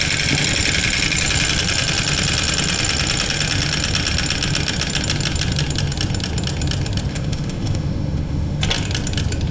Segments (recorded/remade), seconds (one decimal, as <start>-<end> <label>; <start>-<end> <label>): 0.0-7.1 recorded; 7.1-8.6 remade; 8.6-9.5 recorded